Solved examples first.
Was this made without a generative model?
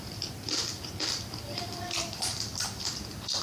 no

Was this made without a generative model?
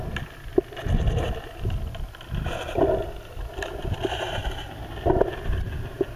yes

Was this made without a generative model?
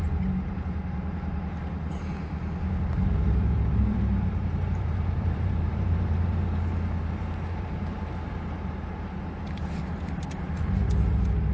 no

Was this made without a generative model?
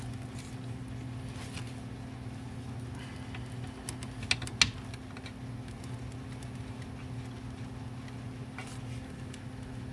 yes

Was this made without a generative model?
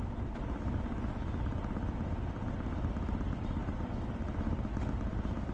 yes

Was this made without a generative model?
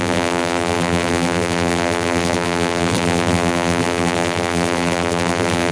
no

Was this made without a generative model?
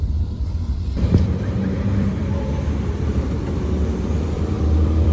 no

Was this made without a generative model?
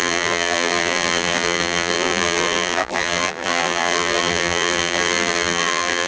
no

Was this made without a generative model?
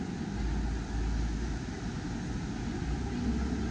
yes